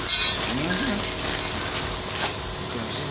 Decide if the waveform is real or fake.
real